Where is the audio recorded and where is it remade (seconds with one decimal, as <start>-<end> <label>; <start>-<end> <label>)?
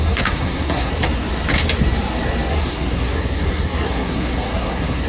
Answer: 0.0-0.9 remade; 0.9-2.5 recorded; 2.5-5.1 remade